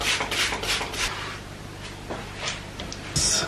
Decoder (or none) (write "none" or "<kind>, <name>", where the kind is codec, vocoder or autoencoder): none